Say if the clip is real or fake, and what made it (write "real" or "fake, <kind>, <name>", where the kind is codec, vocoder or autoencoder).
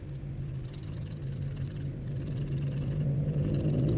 real